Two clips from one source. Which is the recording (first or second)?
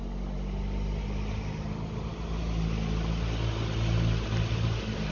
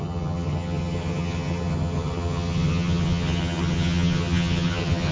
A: first